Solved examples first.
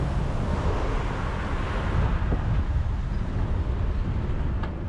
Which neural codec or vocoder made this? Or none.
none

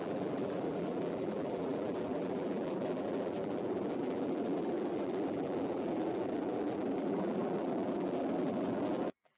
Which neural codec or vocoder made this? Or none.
vocoder, BigVGAN v2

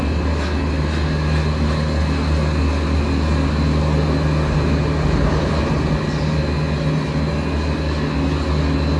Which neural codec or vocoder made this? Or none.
none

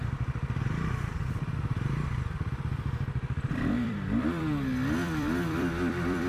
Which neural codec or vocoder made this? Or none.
vocoder, BigVGAN v2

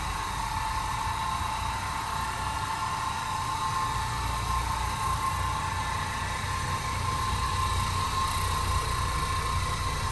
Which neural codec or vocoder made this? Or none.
none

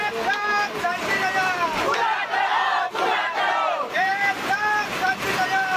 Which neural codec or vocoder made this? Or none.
vocoder, BigVGAN v2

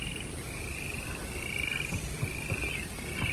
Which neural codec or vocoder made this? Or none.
none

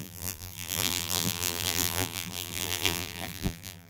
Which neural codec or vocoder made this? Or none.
vocoder, BigVGAN v2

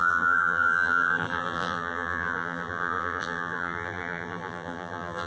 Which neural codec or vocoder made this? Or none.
vocoder, BigVGAN v2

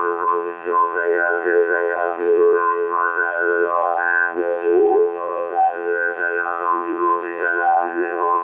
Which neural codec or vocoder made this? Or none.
vocoder, BigVGAN v2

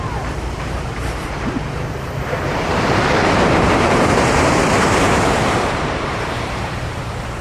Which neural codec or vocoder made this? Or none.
vocoder, BigVGAN v2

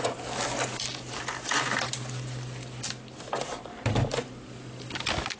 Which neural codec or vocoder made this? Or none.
none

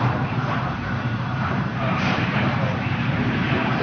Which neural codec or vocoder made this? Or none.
vocoder, BigVGAN v2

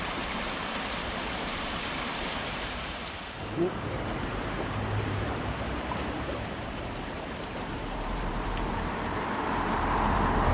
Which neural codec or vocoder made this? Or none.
vocoder, BigVGAN v2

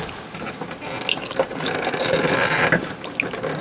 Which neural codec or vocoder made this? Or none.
none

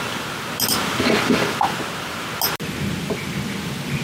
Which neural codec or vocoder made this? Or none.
none